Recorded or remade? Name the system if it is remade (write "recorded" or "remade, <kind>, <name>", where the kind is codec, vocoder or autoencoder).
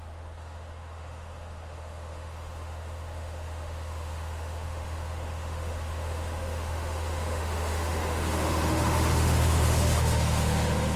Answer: remade, autoencoder, DAC-VAE